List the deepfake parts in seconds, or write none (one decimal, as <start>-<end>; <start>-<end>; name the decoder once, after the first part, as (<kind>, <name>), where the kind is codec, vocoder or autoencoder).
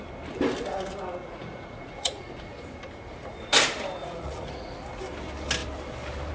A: 1.2-2.3 (vocoder, Vocos); 4.0-4.7